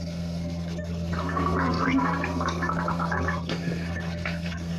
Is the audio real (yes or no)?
no